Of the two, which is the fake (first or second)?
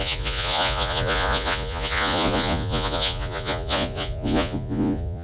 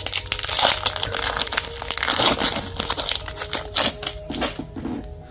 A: first